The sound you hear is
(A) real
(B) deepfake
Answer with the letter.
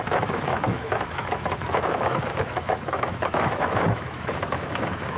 B